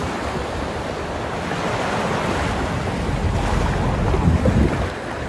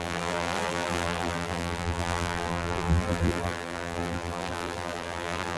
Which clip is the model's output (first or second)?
second